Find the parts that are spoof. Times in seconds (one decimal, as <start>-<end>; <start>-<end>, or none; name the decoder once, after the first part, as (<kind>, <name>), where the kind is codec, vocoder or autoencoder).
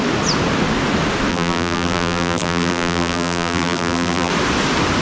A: 1.3-4.3 (vocoder, BigVGAN v2)